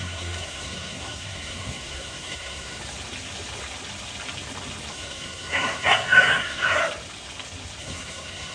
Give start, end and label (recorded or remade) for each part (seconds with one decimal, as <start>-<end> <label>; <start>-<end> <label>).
0.0-2.8 remade; 2.8-4.9 recorded; 4.9-6.8 remade; 6.8-7.8 recorded; 7.8-8.5 remade